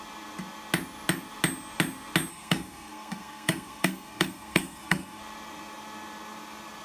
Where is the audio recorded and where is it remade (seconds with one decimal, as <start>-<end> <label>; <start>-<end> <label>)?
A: 0.0-2.3 recorded; 2.3-5.2 remade; 5.2-6.8 recorded

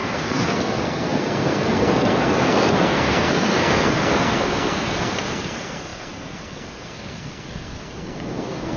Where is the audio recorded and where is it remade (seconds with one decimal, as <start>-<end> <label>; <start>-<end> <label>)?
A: 0.0-8.8 remade

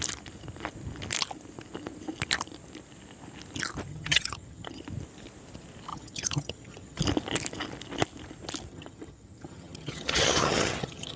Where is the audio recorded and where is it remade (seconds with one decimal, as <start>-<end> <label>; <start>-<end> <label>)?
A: 0.0-3.9 recorded; 3.9-4.8 remade; 4.8-5.9 recorded; 5.9-7.0 remade; 7.0-8.7 recorded; 8.7-11.2 remade